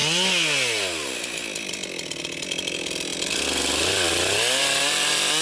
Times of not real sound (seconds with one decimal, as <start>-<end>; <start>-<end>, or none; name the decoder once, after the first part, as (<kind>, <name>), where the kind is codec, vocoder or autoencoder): none